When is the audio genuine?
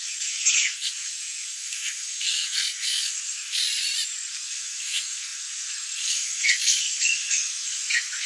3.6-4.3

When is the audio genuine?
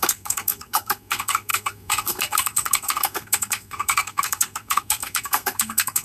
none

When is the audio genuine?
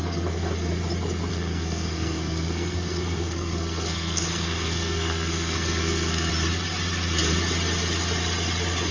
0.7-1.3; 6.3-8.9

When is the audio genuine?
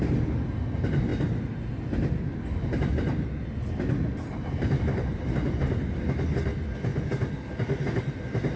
0.0-8.6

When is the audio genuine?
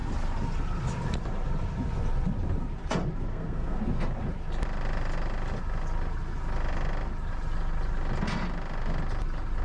0.0-3.3; 3.8-9.6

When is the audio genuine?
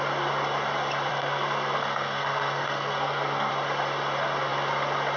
0.0-1.1; 3.5-5.2